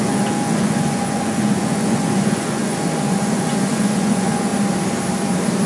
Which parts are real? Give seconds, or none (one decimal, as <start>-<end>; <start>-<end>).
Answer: 4.5-5.7